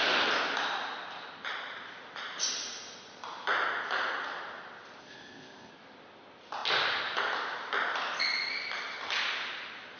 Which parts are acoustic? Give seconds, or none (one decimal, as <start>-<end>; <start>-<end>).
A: 0.0-5.0; 5.7-10.0